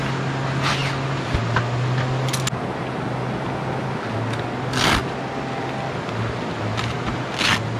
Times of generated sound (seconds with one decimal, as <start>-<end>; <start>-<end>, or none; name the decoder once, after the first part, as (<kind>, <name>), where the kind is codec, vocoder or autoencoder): none